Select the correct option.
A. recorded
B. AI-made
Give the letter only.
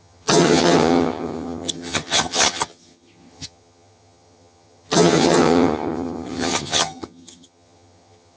B